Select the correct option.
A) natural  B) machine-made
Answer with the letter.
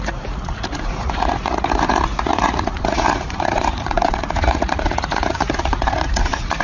B